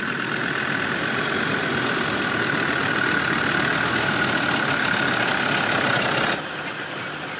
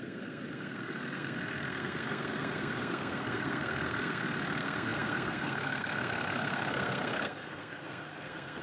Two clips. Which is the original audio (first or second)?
first